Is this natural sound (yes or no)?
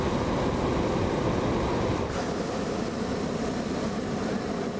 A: yes